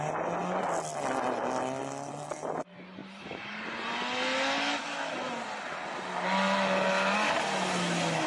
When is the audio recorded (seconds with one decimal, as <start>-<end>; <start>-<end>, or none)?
0.0-3.0; 3.9-8.3